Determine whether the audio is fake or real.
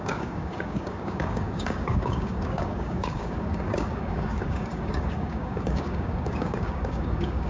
fake